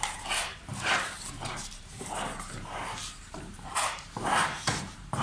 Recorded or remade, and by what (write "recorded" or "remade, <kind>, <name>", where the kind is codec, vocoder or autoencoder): remade, vocoder, BigVGAN v2